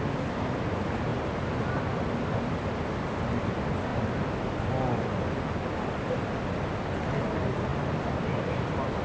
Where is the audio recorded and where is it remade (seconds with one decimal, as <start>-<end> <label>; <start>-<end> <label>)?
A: 0.0-9.0 recorded

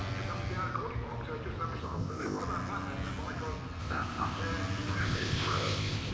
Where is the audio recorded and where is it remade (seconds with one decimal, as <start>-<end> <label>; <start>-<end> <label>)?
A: 0.0-1.8 recorded; 1.8-2.4 remade; 2.4-3.8 recorded; 3.8-4.4 remade; 4.4-5.0 recorded; 5.0-6.1 remade

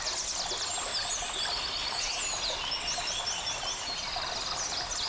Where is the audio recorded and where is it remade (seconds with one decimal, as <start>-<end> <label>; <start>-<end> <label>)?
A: 0.0-5.1 recorded

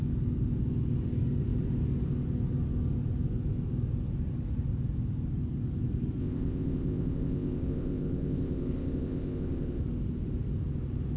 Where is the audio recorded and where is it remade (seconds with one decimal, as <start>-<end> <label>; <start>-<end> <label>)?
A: 0.0-6.2 recorded; 6.2-9.8 remade; 9.8-11.2 recorded

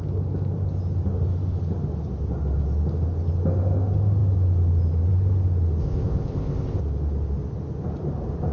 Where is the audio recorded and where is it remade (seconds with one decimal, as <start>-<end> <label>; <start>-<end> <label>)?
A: 0.0-5.8 recorded; 5.8-6.8 remade; 6.8-8.5 recorded

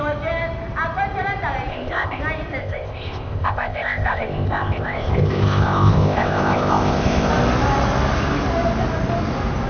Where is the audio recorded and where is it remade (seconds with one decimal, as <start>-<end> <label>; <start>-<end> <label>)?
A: 0.0-1.7 recorded; 1.7-2.2 remade; 2.2-2.6 recorded; 2.6-7.3 remade; 7.3-9.7 recorded

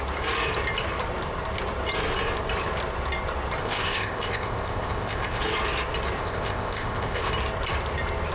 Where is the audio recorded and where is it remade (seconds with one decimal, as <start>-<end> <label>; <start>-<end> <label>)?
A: 0.0-3.6 recorded; 3.6-5.4 remade; 5.4-6.2 recorded; 6.2-7.3 remade; 7.3-8.3 recorded